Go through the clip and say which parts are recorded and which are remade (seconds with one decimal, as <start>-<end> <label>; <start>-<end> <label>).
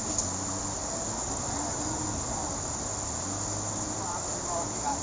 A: 0.0-5.0 recorded